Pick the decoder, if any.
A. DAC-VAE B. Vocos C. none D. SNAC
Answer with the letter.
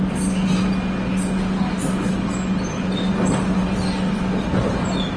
C